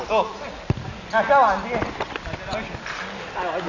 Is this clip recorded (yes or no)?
yes